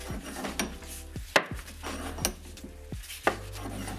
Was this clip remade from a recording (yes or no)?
no